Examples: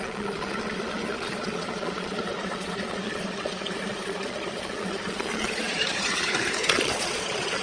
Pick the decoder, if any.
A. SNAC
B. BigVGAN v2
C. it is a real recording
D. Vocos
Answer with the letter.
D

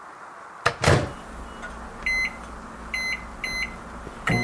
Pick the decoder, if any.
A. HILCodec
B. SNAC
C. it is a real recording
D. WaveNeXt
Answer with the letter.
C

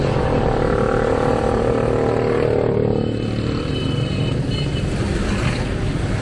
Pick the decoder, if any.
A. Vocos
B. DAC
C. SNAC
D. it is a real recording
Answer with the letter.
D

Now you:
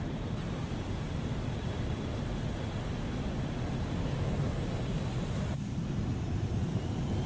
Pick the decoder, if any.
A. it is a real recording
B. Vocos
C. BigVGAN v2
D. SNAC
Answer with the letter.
A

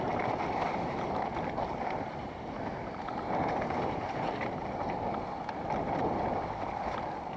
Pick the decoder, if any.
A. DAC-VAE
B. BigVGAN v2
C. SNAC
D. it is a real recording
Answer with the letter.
B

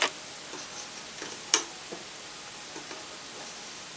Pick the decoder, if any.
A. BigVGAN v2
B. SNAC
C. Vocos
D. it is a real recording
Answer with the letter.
A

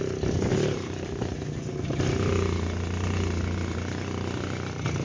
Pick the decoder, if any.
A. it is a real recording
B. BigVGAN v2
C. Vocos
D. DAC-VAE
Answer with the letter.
A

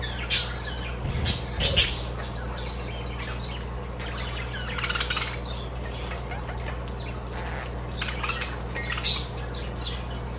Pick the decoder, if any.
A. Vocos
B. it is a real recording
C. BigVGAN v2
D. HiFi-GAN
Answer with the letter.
B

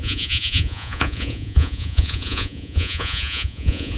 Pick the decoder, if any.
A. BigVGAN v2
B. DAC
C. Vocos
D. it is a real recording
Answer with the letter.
C